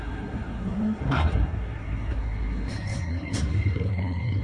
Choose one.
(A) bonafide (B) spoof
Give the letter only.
B